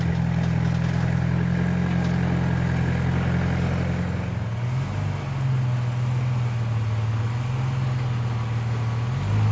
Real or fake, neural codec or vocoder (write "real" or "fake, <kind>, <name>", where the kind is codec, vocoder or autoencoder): real